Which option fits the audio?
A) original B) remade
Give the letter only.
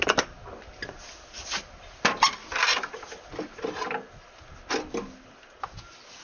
A